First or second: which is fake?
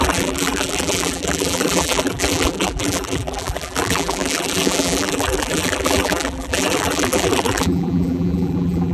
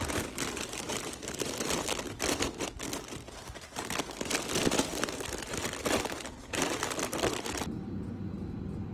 first